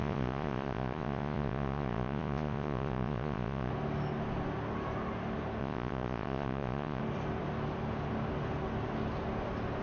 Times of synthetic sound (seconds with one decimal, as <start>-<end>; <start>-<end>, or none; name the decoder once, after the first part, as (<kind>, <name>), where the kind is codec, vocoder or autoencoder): 0.0-3.7 (vocoder, Vocos); 5.6-7.0